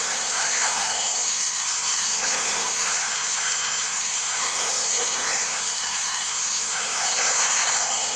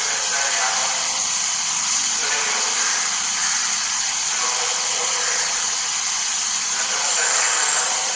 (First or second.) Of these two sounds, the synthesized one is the first